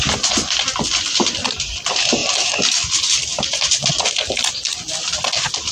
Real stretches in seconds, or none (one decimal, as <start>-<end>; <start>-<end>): 0.0-5.7